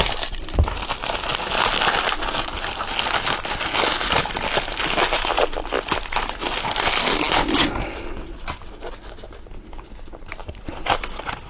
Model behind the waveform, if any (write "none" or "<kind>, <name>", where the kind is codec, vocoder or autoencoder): none